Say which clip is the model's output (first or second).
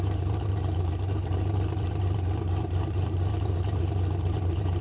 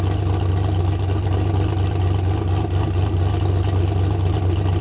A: first